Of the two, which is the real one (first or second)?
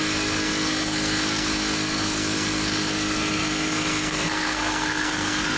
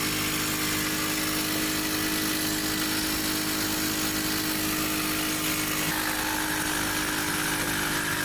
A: second